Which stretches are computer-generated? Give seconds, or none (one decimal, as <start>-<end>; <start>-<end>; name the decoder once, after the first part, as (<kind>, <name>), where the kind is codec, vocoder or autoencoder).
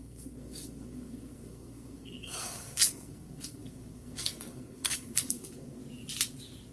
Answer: 0.0-5.8 (codec, SNAC)